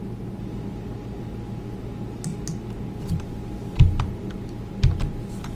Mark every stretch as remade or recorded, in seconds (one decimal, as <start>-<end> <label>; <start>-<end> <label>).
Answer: 0.0-5.5 recorded